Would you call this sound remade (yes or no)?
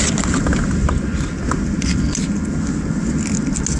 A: no